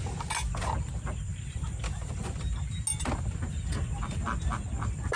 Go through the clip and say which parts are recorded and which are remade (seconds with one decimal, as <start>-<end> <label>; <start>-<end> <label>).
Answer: 0.0-5.2 recorded